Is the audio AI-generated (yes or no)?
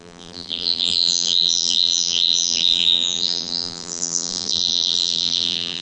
yes